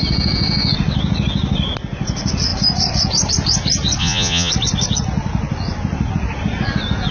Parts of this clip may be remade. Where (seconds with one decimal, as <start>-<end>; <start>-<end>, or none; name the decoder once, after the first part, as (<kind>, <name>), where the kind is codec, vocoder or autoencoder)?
4.0-4.5 (vocoder, Vocos)